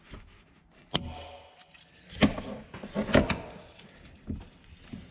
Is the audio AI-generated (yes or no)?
no